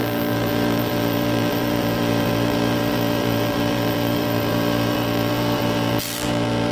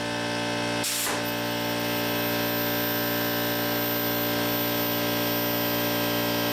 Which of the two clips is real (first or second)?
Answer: second